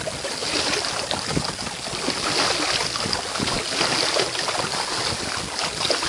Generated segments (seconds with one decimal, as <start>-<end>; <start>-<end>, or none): none